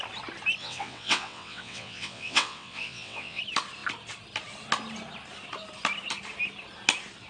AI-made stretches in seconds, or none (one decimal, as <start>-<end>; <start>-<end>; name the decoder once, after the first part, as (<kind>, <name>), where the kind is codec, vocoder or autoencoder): 0.6-3.4 (vocoder, WaveNeXt)